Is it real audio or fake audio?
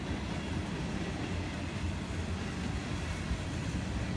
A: real